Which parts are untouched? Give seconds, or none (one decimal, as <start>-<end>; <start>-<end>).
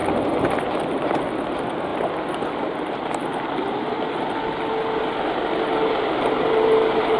0.0-7.2